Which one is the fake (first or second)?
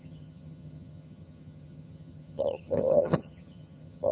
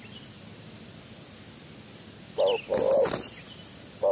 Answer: first